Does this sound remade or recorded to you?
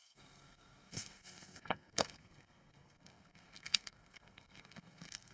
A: remade